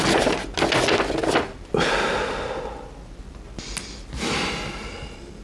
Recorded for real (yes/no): yes